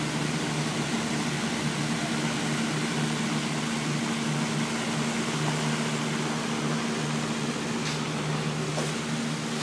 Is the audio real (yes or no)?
yes